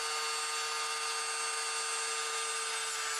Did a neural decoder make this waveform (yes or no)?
no